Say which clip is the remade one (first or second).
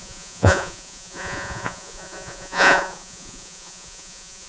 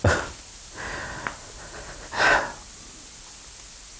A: first